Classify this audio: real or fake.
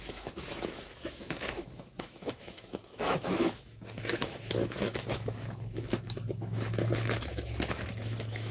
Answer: fake